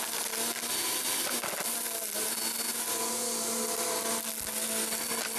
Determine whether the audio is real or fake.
real